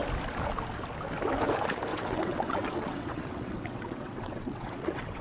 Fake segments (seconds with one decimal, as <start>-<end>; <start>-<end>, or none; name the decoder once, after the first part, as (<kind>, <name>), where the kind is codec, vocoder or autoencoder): 1.9-5.2 (vocoder, WaveNeXt)